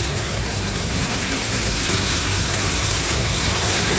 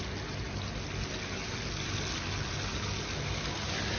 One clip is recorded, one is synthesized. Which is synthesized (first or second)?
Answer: first